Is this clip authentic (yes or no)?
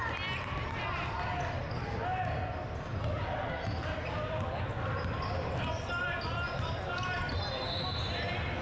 yes